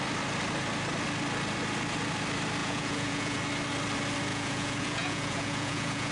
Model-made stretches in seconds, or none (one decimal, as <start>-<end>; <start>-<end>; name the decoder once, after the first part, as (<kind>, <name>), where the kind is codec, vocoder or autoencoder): 2.6-3.4 (vocoder, Vocos); 4.3-6.1